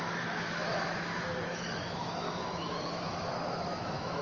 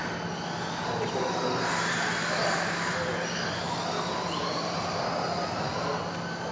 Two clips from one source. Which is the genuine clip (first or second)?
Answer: second